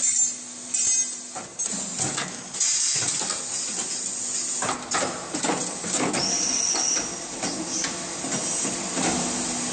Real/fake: real